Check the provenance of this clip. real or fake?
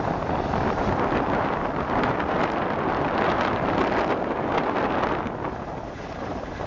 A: real